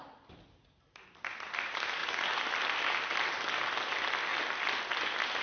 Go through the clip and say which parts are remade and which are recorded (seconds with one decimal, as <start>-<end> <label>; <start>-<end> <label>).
0.0-5.4 recorded